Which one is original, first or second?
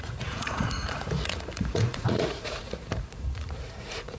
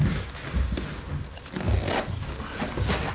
second